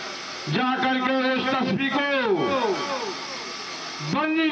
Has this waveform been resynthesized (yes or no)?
no